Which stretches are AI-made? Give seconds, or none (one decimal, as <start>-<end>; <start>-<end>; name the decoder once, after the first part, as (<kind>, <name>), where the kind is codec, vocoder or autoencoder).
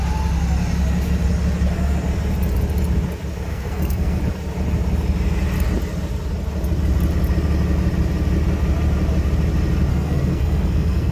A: 3.5-4.2 (codec, SNAC); 9.9-11.1